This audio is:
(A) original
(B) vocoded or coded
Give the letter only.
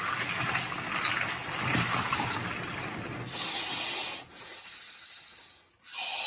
A